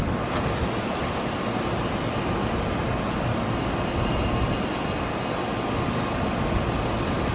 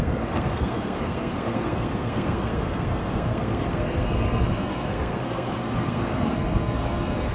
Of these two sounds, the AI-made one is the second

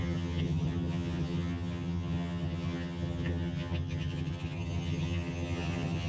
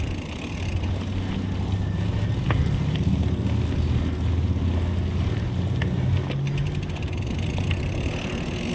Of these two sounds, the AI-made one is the first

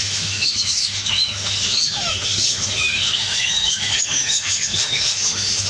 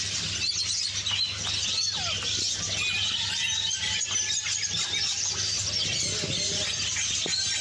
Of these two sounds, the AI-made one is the first